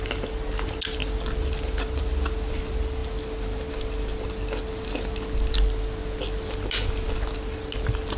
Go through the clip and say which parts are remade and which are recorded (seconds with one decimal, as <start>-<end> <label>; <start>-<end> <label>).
0.0-8.2 recorded